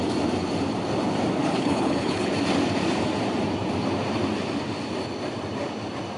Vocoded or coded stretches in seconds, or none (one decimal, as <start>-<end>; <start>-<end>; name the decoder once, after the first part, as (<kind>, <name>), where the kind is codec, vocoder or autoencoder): 1.4-2.3 (codec, HILCodec)